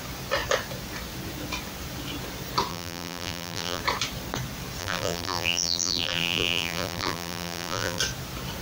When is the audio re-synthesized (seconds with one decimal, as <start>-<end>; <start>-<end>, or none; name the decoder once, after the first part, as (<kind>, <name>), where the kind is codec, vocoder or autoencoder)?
2.7-3.8 (vocoder, BigVGAN v2); 4.8-8.0